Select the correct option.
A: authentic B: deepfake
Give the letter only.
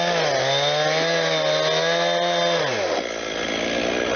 A